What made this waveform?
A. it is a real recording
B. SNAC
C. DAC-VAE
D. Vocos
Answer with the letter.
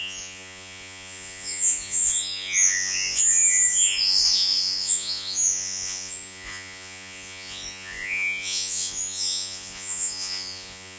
D